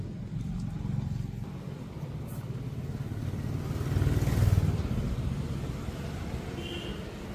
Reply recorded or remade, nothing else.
recorded